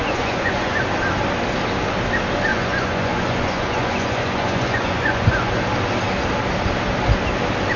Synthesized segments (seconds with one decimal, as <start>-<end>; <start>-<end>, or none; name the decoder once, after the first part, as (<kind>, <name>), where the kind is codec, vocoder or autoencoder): 0.0-0.8 (vocoder, Vocos); 2.5-5.5